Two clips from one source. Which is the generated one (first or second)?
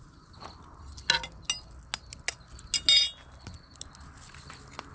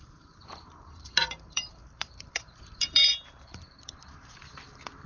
second